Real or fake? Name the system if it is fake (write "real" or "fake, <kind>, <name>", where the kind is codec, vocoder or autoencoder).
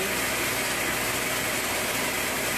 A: real